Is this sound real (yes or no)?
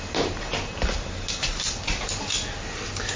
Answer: yes